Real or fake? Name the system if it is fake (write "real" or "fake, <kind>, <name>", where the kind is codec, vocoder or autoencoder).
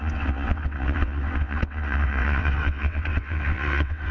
fake, vocoder, WaveNeXt